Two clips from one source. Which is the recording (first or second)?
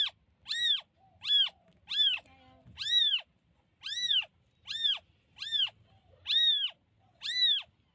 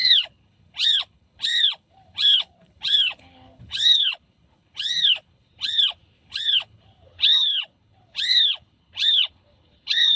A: first